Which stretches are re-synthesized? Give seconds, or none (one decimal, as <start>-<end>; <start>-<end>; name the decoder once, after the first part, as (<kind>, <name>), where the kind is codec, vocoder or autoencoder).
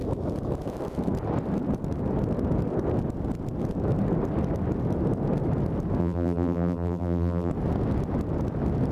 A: 6.0-7.5 (vocoder, BigVGAN v2)